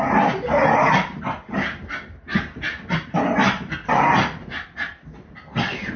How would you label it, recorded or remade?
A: recorded